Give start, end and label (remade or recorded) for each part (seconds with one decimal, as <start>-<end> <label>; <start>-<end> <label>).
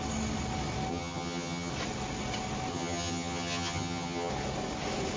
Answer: 0.0-0.9 recorded; 0.9-1.7 remade; 1.7-2.7 recorded; 2.7-4.3 remade; 4.3-5.2 recorded